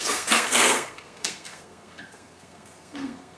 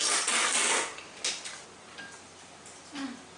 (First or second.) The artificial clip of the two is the first